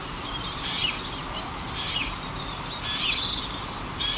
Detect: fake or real real